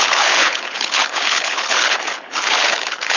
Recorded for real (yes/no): no